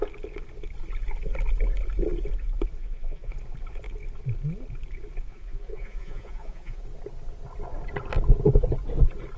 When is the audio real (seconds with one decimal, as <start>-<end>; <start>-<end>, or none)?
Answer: 0.0-2.8; 3.3-5.3; 6.8-9.4